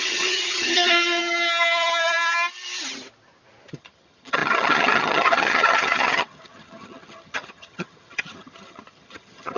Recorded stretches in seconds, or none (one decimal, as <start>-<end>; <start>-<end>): 1.2-3.7